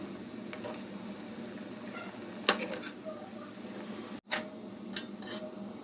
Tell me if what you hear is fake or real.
real